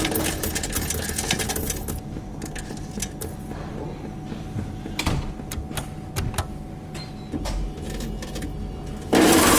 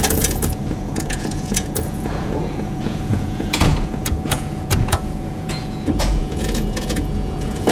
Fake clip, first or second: second